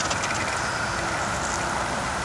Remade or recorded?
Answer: recorded